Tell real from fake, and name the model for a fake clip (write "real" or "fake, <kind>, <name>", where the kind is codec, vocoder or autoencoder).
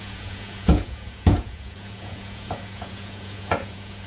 fake, vocoder, Vocos